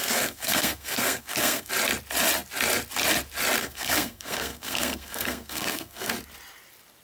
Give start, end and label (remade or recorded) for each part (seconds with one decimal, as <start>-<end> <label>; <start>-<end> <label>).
0.0-1.7 remade; 1.7-3.6 recorded; 3.6-6.1 remade; 6.1-7.0 recorded